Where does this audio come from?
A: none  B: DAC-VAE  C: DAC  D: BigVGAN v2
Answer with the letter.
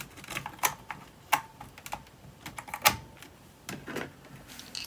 A